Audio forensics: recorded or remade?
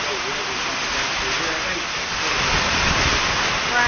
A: recorded